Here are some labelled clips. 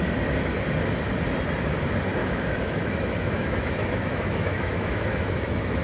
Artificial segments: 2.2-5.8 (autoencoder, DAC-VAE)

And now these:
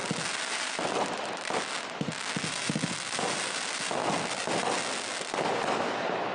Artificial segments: none

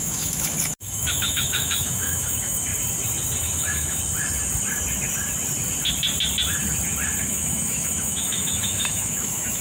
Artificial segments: 0.0-2.7 (autoencoder, DAC-VAE); 3.4-4.0; 7.2-9.6

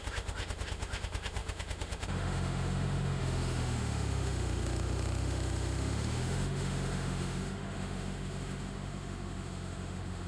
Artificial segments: 0.0-10.3 (autoencoder, DAC-VAE)

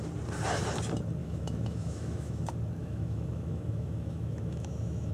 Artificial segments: 1.2-2.4 (autoencoder, DAC-VAE); 2.8-5.1